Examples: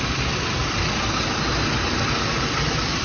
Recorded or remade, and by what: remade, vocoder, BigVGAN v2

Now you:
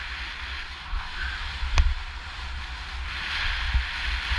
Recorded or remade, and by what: recorded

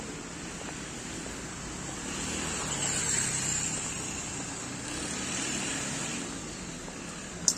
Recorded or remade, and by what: recorded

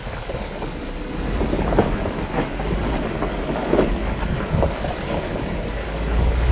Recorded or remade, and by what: remade, codec, DAC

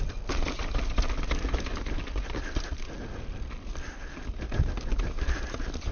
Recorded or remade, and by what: recorded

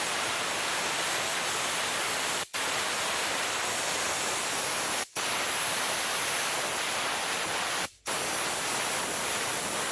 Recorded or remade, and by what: remade, vocoder, BigVGAN v2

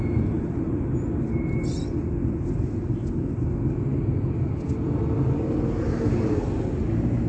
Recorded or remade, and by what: recorded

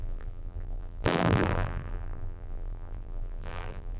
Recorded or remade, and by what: remade, vocoder, BigVGAN v2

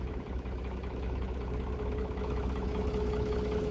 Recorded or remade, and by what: remade, autoencoder, DAC-VAE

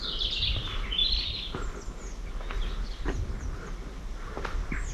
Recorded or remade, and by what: recorded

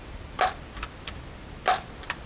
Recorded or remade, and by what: recorded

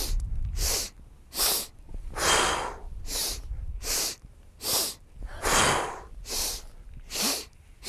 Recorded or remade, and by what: recorded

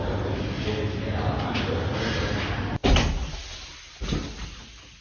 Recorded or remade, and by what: recorded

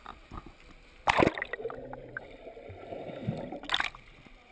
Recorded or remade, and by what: recorded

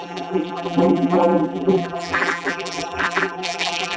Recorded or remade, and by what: remade, vocoder, BigVGAN v2